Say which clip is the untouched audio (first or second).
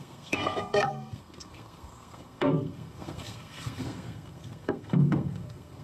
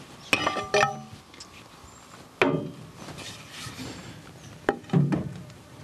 second